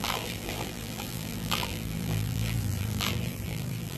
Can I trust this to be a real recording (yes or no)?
no